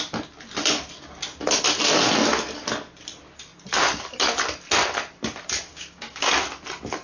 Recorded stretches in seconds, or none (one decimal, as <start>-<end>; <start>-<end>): 0.0-5.7; 6.3-7.0